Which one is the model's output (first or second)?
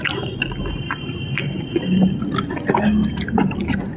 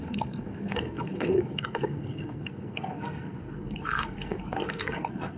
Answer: second